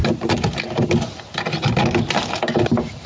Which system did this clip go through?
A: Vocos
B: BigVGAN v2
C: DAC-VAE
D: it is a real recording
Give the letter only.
D